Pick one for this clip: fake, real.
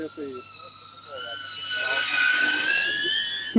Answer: real